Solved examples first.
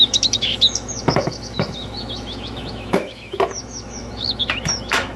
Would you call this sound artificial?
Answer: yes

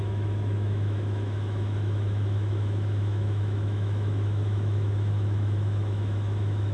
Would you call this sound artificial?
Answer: yes